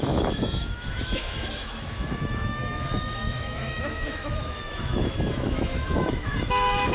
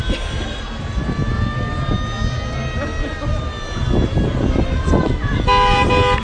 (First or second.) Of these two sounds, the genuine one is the second